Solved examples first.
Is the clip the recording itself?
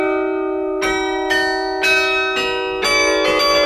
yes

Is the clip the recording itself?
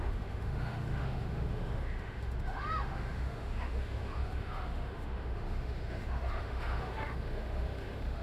no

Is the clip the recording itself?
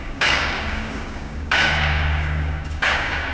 no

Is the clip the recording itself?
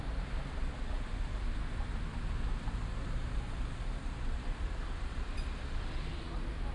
yes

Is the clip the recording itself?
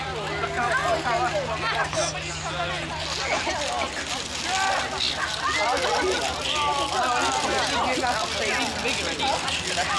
yes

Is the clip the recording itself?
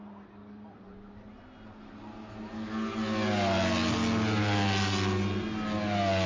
yes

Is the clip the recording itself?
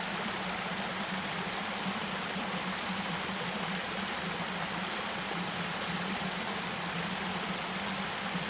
yes